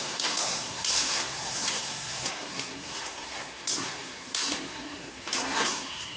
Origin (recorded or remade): remade